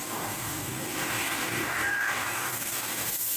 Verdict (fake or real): fake